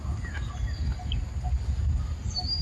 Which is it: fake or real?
real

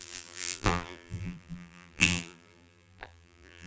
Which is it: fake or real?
fake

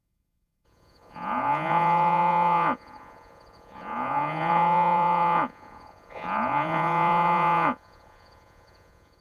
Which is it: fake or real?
fake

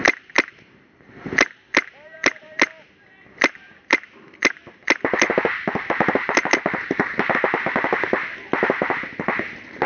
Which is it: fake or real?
real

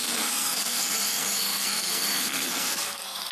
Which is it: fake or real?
fake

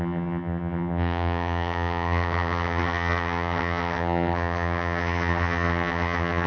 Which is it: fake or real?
fake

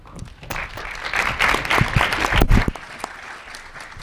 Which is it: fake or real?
real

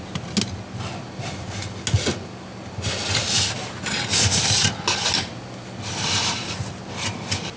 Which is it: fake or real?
real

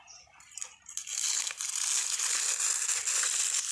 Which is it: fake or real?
real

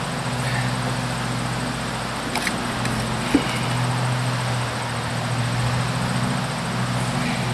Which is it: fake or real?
real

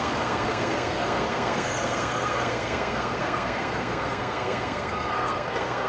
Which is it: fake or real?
fake